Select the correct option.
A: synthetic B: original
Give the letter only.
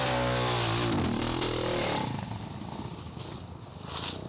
B